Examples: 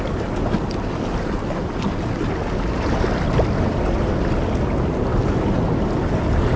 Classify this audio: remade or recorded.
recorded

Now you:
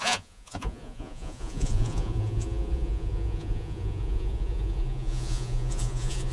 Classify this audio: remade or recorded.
remade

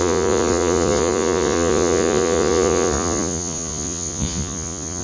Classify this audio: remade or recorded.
remade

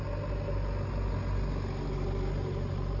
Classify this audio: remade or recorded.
recorded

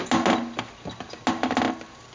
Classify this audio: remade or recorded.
recorded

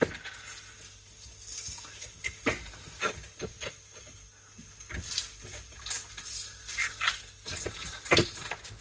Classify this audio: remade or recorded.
recorded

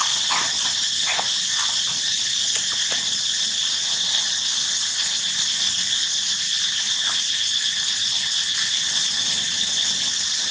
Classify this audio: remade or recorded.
recorded